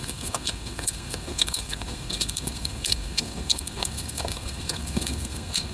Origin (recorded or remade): remade